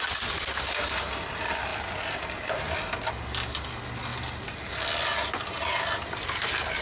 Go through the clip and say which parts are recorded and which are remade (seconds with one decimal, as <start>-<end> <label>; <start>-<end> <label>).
0.0-6.8 recorded